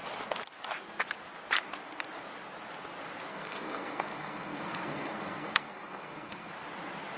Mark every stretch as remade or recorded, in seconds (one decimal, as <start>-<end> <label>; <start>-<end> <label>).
0.0-3.3 recorded; 3.3-6.5 remade; 6.5-7.2 recorded